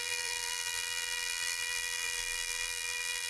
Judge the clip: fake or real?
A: fake